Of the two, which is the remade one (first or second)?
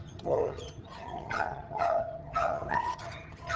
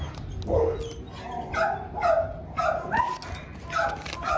first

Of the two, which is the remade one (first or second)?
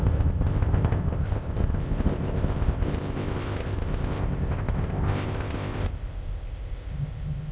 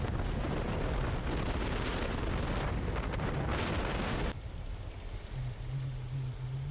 first